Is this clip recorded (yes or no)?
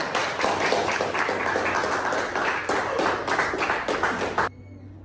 yes